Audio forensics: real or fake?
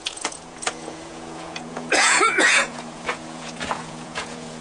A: fake